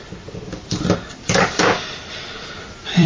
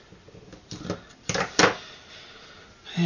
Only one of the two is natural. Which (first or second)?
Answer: second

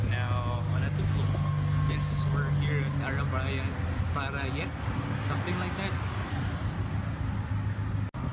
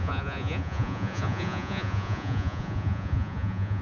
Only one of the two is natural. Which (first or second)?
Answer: first